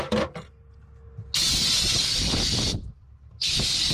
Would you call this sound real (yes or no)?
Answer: yes